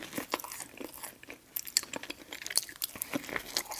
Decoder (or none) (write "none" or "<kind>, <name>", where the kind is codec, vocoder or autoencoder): none